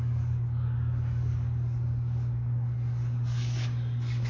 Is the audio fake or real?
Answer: fake